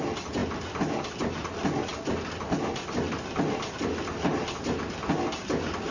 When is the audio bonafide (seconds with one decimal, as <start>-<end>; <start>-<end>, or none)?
0.0-5.9